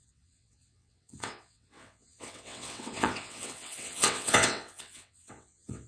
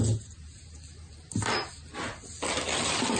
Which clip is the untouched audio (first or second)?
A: second